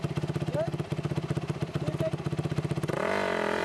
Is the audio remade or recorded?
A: recorded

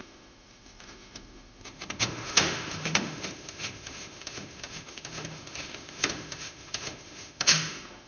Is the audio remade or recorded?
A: remade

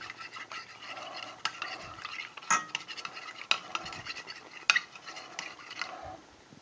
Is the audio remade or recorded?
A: recorded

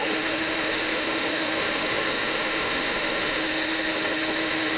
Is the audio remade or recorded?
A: remade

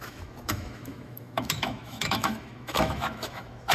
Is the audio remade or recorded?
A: remade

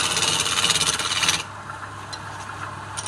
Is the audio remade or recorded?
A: recorded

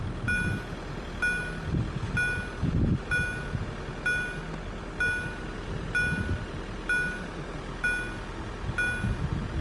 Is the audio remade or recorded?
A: recorded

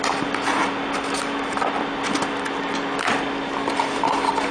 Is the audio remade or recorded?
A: recorded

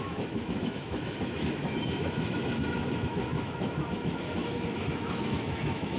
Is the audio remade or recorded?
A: remade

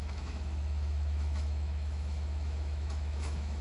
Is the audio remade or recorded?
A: remade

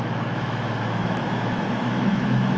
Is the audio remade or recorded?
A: remade